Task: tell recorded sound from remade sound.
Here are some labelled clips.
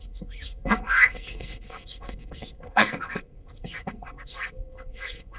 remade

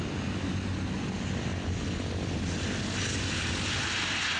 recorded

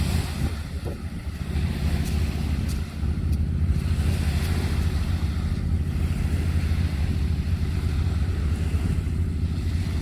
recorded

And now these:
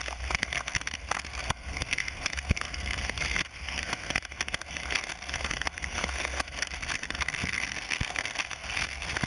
remade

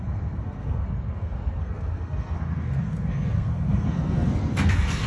remade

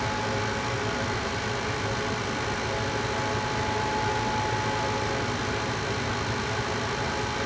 recorded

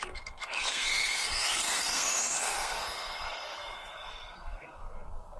remade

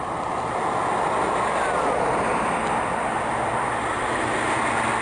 recorded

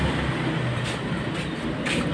recorded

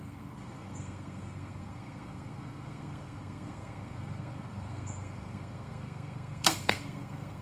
remade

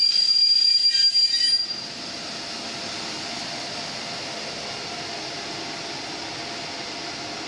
recorded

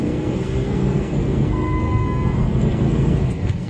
remade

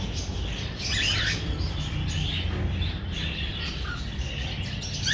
recorded